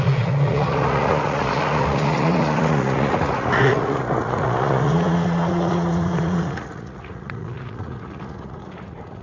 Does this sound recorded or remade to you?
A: remade